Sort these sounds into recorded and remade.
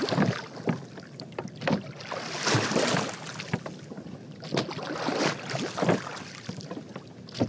recorded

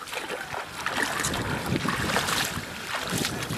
recorded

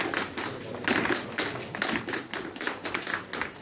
recorded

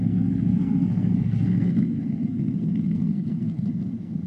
remade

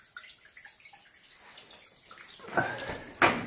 recorded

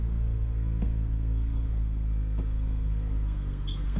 remade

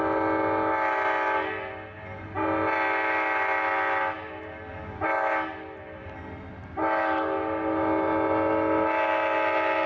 recorded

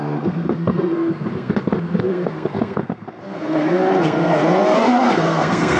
remade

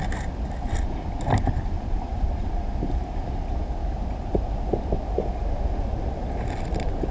recorded